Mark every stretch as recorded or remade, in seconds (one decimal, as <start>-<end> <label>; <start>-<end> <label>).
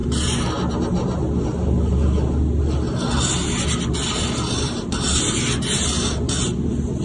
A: 0.0-7.0 recorded